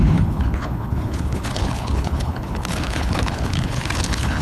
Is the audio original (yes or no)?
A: no